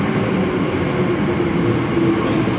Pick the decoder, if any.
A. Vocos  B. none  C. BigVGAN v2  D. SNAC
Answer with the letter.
B